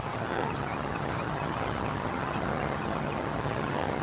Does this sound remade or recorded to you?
remade